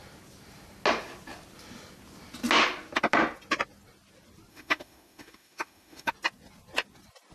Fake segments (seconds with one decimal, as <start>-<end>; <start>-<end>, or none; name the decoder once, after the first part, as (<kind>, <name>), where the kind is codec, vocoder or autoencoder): 4.5-6.1 (autoencoder, DAC-VAE)